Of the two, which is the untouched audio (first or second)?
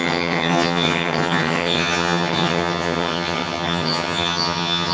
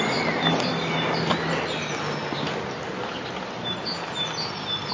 second